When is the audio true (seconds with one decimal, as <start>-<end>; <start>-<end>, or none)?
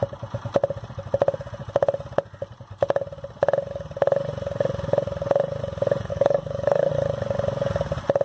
0.0-6.1; 6.9-8.2